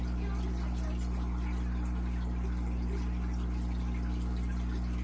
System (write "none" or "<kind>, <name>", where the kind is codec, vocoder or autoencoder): none